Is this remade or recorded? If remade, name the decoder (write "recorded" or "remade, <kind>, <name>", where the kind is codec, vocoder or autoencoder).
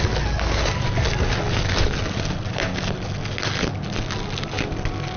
recorded